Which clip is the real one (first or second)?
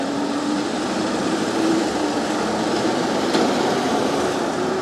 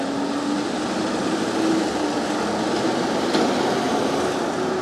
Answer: second